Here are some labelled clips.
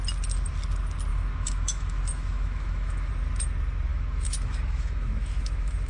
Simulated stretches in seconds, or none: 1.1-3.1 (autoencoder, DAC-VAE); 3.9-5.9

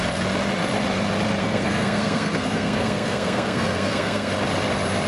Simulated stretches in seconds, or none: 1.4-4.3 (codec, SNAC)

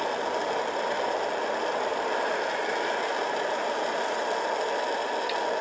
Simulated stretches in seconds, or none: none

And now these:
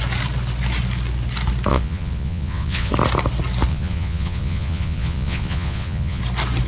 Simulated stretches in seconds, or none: 1.7-2.9 (vocoder, Vocos); 3.7-6.2

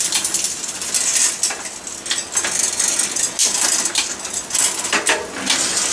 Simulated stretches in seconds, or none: none

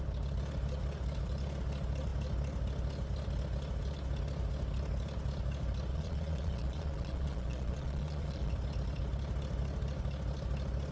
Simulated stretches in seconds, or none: 5.9-8.5 (vocoder, Vocos)

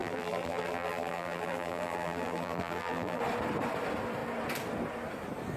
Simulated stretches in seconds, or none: 0.0-3.2 (vocoder, BigVGAN v2)

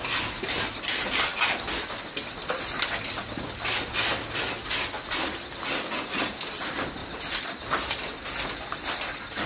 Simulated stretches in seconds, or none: none